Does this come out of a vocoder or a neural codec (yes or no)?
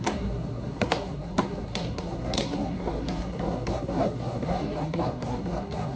yes